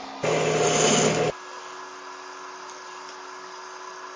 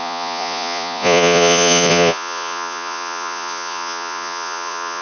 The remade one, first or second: second